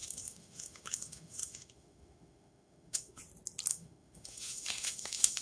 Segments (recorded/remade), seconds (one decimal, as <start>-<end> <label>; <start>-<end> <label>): 0.0-3.2 remade; 3.2-3.7 recorded; 3.7-5.4 remade